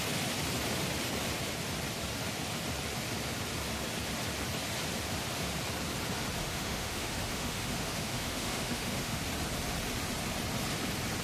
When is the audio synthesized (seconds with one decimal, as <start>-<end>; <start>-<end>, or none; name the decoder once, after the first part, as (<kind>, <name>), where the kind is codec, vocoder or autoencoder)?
6.4-9.2 (autoencoder, DAC-VAE)